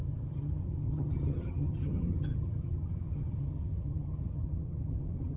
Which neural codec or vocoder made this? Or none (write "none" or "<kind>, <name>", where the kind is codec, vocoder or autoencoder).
vocoder, HiFi-GAN